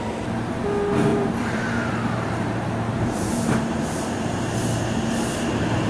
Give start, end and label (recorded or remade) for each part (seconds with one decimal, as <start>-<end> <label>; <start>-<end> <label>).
0.0-1.1 recorded; 1.1-4.6 remade; 4.6-5.9 recorded